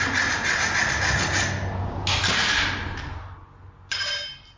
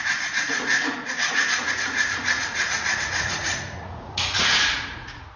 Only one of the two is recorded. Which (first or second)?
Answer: first